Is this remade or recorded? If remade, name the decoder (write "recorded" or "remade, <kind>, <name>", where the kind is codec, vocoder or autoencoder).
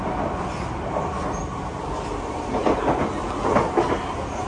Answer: recorded